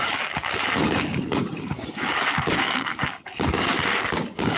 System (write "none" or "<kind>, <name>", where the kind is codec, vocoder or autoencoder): codec, DAC